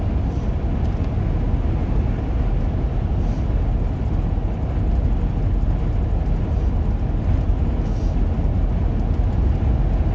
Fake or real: real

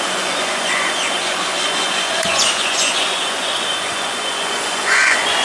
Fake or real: fake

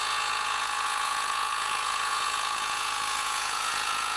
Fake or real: fake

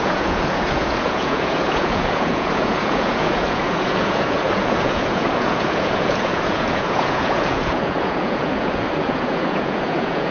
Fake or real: fake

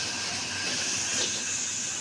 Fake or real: real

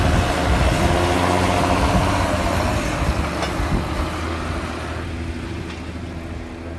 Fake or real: real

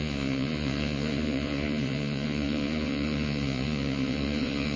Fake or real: fake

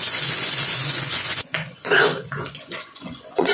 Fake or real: fake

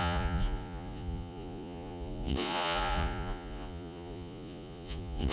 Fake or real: fake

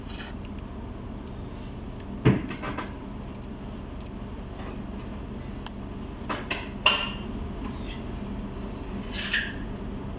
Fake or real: real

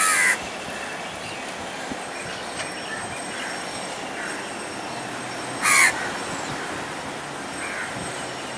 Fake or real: real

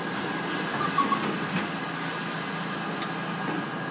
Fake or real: real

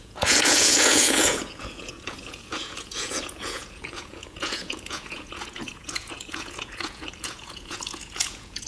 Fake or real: fake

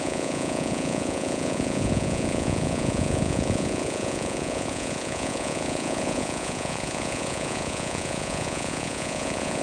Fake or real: fake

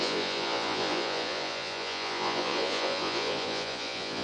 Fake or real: fake